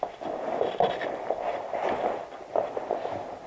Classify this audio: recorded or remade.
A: recorded